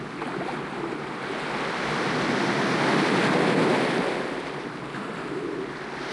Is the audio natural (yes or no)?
yes